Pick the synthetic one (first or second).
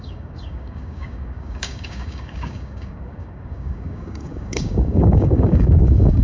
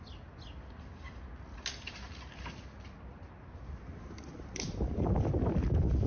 first